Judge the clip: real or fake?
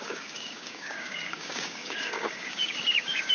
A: fake